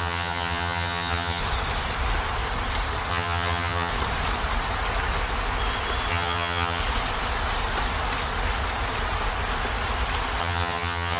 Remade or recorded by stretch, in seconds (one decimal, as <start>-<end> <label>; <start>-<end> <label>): 0.0-1.4 remade; 1.4-3.1 recorded; 3.1-3.9 remade; 3.9-6.1 recorded; 6.1-6.8 remade; 6.8-10.4 recorded; 10.4-11.2 remade